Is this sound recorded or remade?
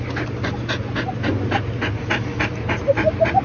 recorded